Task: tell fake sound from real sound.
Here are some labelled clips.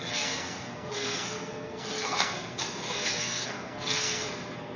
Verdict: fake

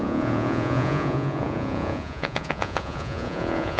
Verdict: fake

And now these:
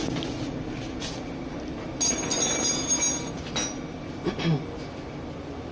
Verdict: real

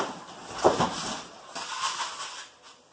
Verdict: real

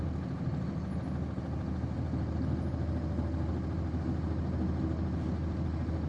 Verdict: real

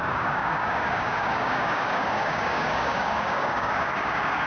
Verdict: fake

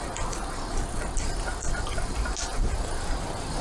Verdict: real